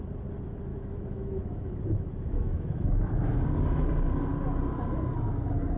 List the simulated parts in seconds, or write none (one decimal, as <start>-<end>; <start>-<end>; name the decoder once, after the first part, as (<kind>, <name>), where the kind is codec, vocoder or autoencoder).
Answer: 0.7-3.4 (autoencoder, DAC-VAE)